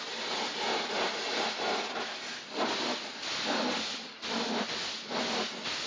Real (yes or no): yes